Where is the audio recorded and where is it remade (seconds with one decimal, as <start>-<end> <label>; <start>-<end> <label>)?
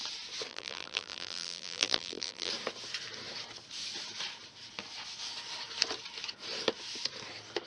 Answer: 0.0-0.5 recorded; 0.5-2.5 remade; 2.5-7.7 recorded